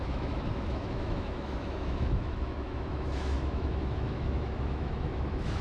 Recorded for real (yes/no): no